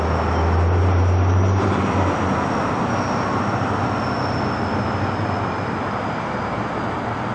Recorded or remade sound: recorded